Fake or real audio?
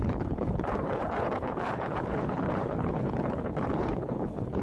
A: fake